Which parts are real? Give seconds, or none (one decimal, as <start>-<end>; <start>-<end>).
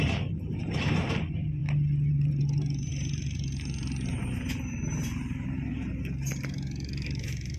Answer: 1.6-2.1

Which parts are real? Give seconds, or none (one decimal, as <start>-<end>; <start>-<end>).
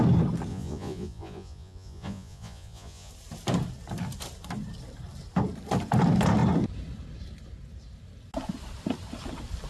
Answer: 0.0-0.5; 3.1-9.7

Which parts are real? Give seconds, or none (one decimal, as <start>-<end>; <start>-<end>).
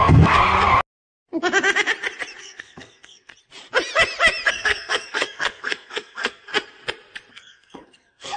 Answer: 0.4-2.4; 3.3-4.5; 6.5-7.3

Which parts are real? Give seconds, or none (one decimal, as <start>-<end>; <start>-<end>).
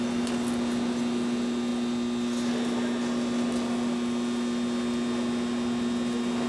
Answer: 0.0-6.5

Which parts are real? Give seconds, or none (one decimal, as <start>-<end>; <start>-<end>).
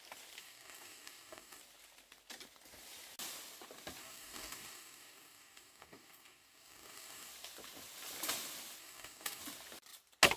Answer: 0.0-0.4; 1.6-4.0; 7.3-8.8; 9.4-10.4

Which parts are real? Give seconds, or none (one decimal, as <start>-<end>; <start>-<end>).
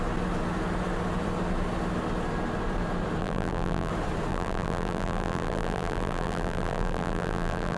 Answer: 0.0-3.2; 3.9-4.3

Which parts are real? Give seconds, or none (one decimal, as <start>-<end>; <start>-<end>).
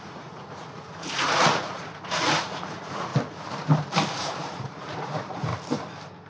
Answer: 3.1-4.2; 5.5-6.3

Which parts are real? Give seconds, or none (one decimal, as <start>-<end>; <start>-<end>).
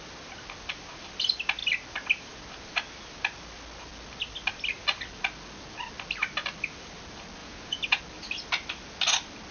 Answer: 0.0-7.4; 8.0-9.5